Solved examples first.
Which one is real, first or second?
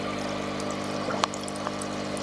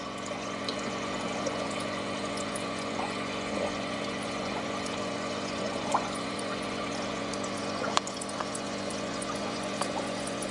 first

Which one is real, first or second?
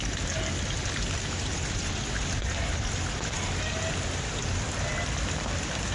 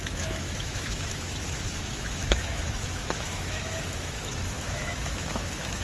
first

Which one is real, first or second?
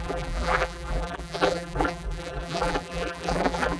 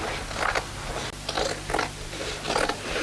second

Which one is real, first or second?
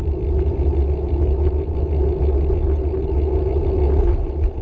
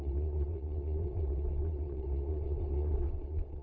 first